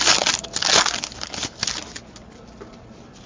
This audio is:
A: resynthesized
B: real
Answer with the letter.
B